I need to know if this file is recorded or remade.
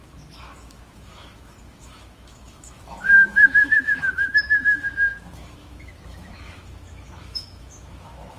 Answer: remade